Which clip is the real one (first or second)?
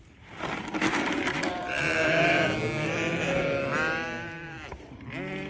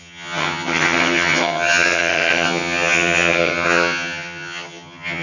first